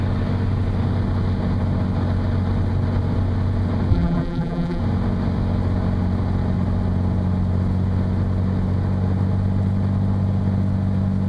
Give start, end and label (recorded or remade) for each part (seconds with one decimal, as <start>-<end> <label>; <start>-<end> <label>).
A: 0.0-3.9 recorded; 3.9-4.8 remade; 4.8-11.3 recorded

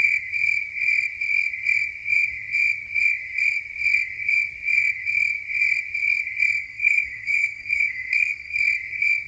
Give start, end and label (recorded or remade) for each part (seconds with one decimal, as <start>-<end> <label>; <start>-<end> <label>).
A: 0.0-6.6 recorded; 6.6-8.6 remade; 8.6-9.3 recorded

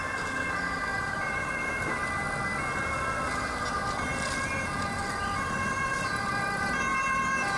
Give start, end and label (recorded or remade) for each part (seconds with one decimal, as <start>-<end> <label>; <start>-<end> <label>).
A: 0.0-0.9 recorded; 0.9-1.9 remade; 1.9-7.6 recorded

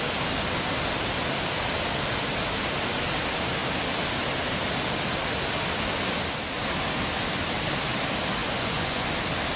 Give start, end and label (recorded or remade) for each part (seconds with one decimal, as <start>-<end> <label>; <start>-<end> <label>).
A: 0.0-8.4 recorded; 8.4-9.1 remade; 9.1-9.6 recorded